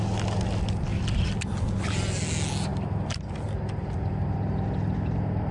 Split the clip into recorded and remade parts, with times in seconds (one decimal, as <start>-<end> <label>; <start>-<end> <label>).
0.0-5.5 recorded